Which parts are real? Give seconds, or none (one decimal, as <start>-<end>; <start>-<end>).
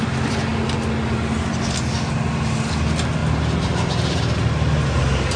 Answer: 0.0-5.4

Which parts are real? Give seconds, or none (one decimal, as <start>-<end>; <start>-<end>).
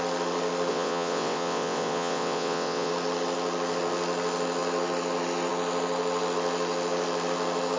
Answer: 0.0-0.7; 2.9-7.8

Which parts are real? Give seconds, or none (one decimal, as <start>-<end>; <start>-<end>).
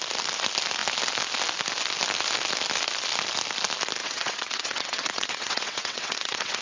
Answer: 0.0-4.0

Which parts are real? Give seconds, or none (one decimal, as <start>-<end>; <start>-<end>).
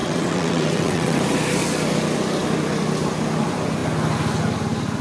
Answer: 1.2-5.0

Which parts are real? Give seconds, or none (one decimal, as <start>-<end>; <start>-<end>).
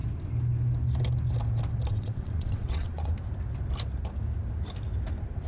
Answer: 0.0-1.9; 3.1-5.5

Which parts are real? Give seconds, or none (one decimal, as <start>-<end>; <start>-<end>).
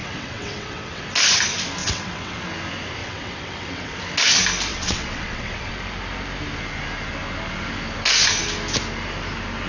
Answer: 1.0-1.8; 2.4-3.0; 4.0-4.7; 5.7-9.7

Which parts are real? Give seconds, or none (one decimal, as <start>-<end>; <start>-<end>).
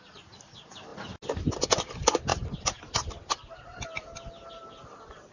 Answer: 0.0-5.3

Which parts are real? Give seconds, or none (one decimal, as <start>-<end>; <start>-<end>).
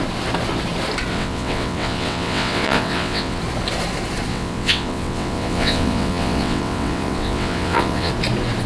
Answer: 0.0-1.1; 3.4-4.3; 8.1-8.7